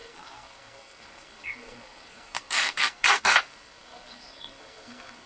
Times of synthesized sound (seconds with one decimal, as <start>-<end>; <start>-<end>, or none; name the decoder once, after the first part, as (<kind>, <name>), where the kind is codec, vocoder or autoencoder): 0.0-5.3 (codec, SNAC)